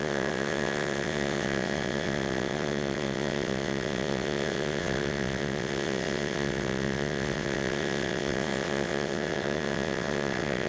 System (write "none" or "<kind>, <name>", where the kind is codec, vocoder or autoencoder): vocoder, WaveNeXt